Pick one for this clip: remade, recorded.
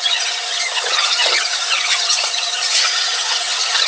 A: remade